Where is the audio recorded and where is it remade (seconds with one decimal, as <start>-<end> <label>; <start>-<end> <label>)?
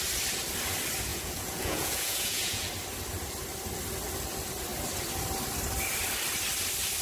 0.0-1.1 recorded; 1.1-2.7 remade; 2.7-7.0 recorded